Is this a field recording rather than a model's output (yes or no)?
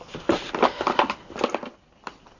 yes